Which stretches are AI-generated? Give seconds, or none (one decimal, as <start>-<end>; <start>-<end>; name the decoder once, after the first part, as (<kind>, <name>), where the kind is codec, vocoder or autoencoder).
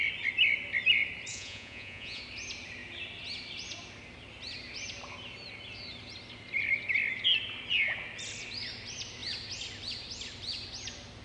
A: 1.3-2.2 (vocoder, Vocos)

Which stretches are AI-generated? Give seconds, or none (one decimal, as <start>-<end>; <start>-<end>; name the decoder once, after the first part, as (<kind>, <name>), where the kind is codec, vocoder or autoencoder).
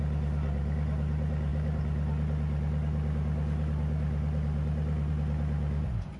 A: none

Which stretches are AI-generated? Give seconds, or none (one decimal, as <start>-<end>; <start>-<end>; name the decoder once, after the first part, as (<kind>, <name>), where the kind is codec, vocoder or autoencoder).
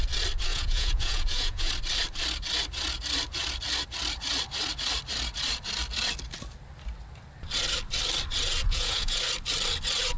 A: 0.5-1.7 (vocoder, Vocos); 8.6-9.2